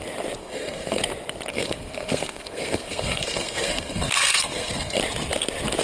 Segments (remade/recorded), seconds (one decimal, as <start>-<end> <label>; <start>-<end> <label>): 0.0-0.4 recorded; 0.4-1.0 remade; 1.0-1.5 recorded; 1.5-5.0 remade; 5.0-5.8 recorded